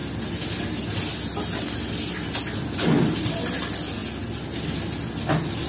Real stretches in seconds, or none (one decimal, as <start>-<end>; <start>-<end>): 0.0-5.7